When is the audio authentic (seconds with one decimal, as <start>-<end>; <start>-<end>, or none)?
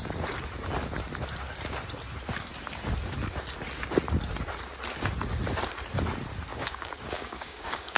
0.0-6.5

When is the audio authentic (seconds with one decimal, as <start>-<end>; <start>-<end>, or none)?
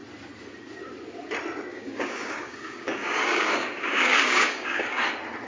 0.0-1.7; 5.0-5.5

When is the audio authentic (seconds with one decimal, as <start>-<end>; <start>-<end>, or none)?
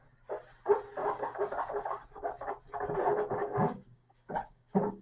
0.0-1.0; 2.5-3.4